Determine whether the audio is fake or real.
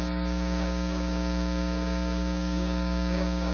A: fake